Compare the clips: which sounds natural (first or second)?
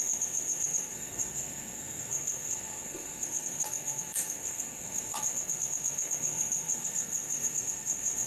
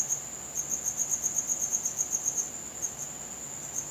second